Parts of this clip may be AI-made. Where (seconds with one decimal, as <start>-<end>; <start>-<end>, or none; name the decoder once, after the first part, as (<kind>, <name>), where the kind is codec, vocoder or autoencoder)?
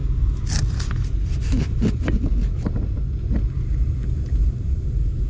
none